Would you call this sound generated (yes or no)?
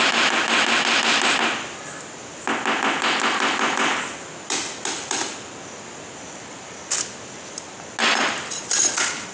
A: no